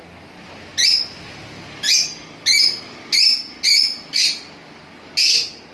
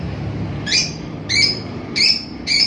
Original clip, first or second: first